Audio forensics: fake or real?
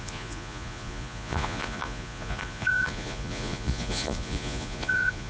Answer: fake